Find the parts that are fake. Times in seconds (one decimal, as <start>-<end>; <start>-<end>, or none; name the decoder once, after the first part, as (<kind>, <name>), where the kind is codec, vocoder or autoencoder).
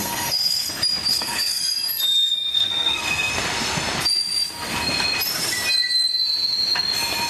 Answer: 0.0-0.7 (codec, SNAC); 1.1-1.6; 2.5-3.3